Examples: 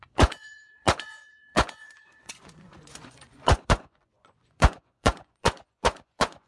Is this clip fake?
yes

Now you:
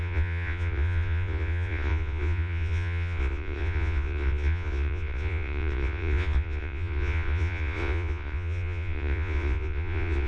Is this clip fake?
yes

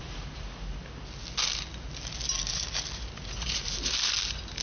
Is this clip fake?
no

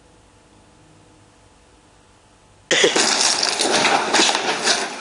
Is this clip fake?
no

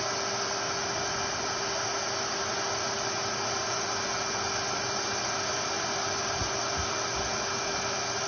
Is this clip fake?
no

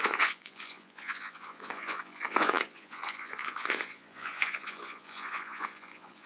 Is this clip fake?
yes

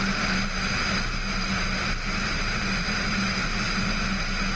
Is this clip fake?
no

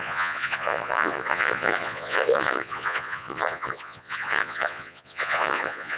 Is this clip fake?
yes